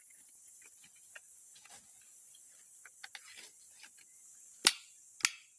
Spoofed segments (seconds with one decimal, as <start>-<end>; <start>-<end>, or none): none